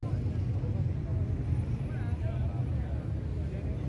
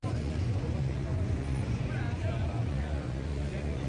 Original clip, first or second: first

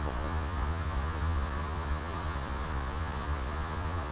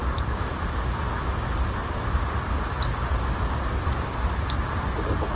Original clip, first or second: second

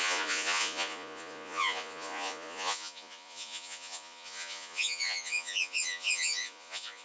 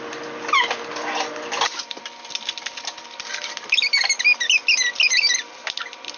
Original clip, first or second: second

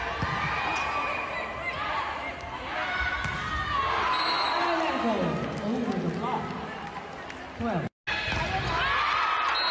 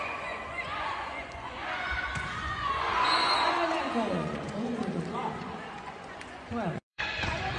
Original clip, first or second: first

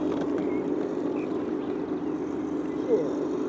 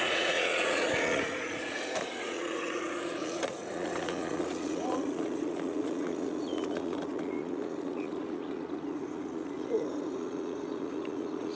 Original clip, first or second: first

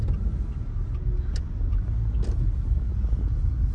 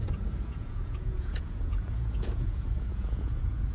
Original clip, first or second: first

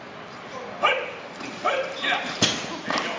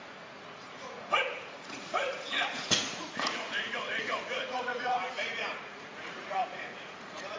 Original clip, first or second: first